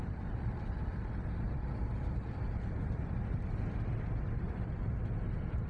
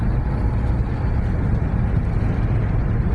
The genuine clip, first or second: second